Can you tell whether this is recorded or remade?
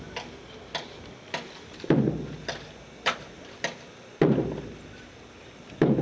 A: recorded